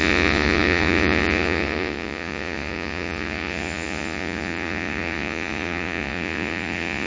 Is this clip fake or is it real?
fake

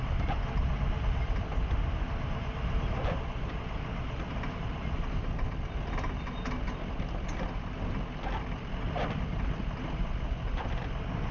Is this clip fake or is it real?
real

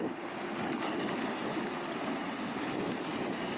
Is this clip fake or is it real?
real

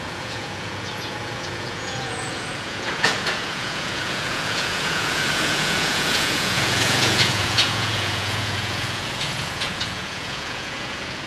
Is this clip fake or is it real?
fake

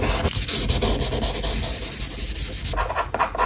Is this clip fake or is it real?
real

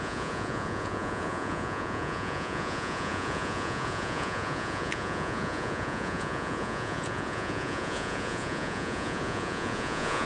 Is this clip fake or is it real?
fake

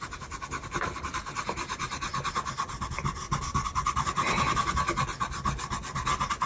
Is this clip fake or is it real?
real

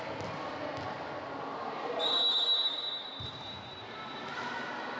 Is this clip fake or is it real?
real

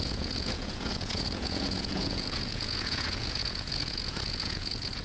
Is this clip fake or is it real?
fake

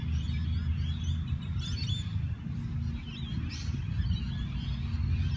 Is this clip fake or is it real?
real